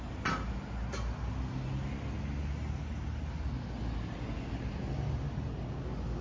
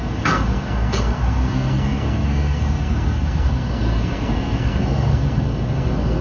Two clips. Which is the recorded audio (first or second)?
first